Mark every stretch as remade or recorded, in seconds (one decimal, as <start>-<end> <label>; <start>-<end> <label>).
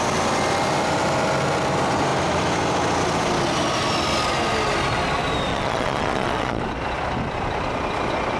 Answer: 0.0-5.5 recorded; 5.5-6.6 remade; 6.6-8.4 recorded